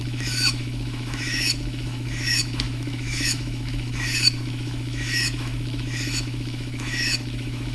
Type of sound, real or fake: fake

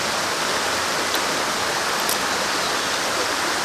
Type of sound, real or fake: real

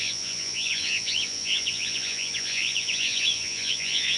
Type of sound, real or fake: fake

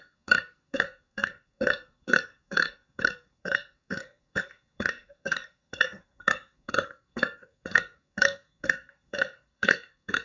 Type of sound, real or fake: fake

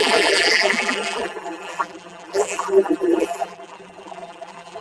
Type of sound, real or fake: fake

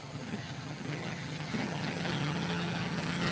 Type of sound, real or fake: fake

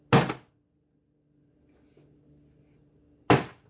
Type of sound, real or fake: real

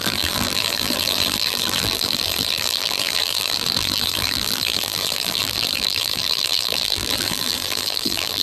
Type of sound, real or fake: fake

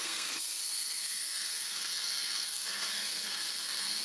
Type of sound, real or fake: fake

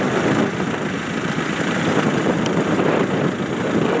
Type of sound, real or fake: real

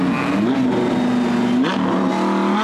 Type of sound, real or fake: real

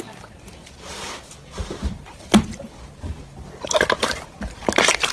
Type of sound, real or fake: real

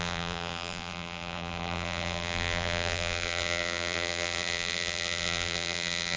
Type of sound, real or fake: fake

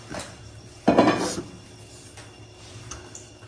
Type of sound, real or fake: real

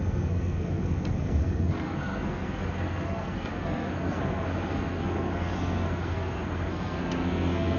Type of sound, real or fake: fake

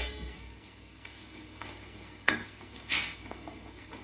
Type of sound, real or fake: fake